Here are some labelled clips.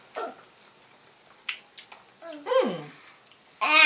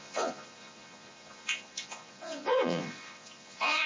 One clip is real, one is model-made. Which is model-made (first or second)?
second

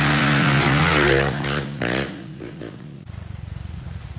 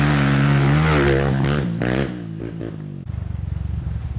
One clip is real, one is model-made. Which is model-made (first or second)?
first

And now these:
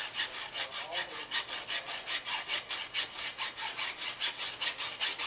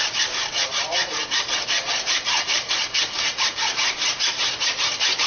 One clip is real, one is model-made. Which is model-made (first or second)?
second